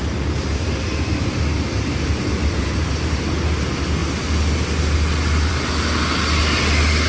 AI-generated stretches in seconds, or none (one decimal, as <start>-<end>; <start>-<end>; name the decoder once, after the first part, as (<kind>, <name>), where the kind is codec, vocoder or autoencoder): none